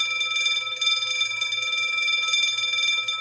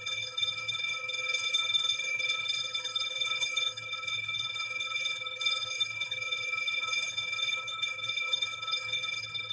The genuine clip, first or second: first